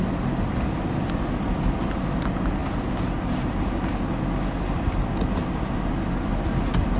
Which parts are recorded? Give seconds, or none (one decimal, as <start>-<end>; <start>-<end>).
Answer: 0.0-7.0